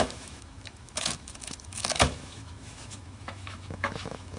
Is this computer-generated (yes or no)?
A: yes